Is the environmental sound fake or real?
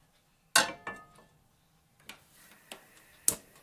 real